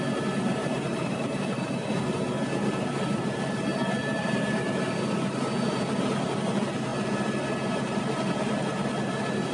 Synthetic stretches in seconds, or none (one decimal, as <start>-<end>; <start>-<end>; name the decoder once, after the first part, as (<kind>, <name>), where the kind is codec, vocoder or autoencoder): 0.6-1.7 (vocoder, BigVGAN v2); 3.7-4.9